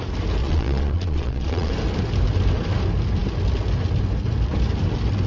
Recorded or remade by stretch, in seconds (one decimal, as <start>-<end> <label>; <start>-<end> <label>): 0.0-0.4 recorded; 0.4-1.7 remade; 1.7-5.3 recorded